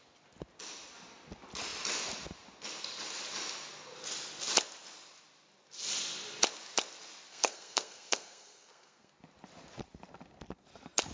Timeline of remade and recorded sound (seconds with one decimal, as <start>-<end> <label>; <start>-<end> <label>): 0.0-7.3 recorded; 7.3-9.1 remade; 9.1-11.1 recorded